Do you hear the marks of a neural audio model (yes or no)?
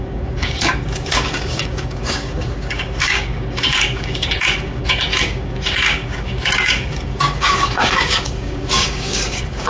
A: yes